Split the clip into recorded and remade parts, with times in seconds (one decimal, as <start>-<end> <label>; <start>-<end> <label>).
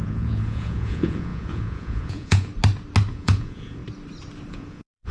0.0-2.5 remade; 2.5-3.1 recorded; 3.1-3.8 remade; 3.8-4.5 recorded; 4.5-5.1 remade